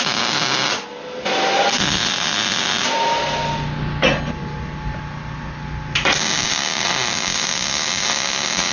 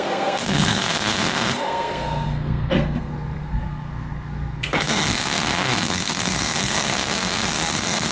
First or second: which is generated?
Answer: second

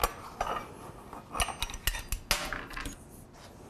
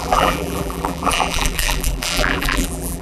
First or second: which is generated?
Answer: second